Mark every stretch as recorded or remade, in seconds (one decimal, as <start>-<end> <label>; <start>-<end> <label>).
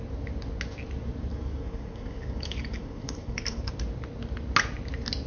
0.0-1.3 recorded; 1.3-3.7 remade; 3.7-5.3 recorded